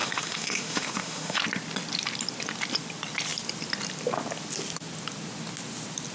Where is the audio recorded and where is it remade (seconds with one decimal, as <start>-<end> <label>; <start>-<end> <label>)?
0.0-1.4 remade; 1.4-6.1 recorded